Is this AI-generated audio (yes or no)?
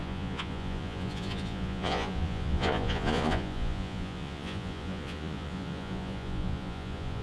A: yes